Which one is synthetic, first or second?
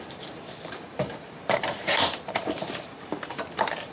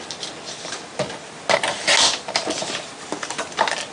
first